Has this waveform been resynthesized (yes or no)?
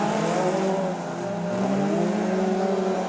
no